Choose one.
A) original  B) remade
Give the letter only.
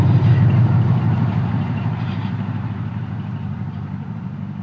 B